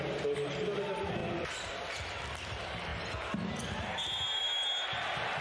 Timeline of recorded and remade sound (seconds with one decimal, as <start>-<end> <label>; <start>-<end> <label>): 0.0-1.2 recorded; 1.2-1.9 remade; 1.9-5.4 recorded